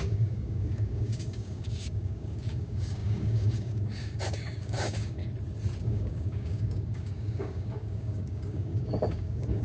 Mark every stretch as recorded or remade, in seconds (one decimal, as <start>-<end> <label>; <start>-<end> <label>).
0.0-5.2 remade; 5.2-5.8 recorded; 5.8-9.6 remade